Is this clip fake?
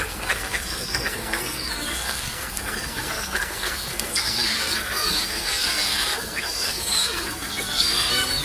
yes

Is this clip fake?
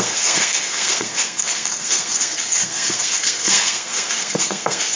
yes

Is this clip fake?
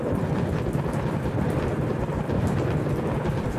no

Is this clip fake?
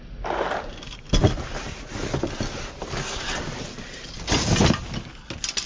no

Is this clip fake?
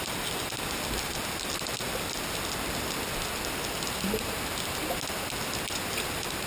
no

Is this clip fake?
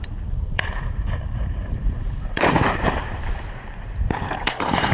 yes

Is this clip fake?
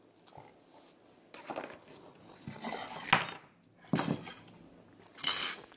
no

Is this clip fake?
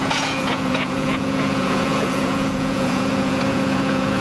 yes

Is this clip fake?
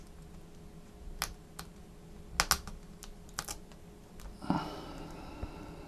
no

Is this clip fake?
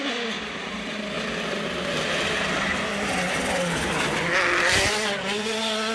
no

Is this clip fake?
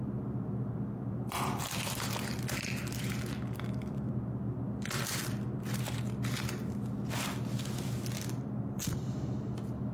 yes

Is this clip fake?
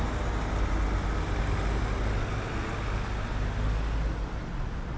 no